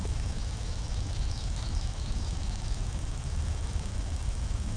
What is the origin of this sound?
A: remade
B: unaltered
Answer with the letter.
A